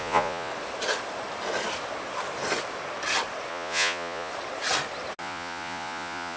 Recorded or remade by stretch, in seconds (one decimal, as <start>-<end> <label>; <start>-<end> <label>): 0.0-0.5 remade; 0.5-3.5 recorded; 3.5-4.3 remade; 4.3-5.2 recorded; 5.2-6.4 remade